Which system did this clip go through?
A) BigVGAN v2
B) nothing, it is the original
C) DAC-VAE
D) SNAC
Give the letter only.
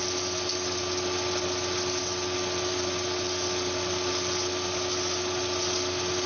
B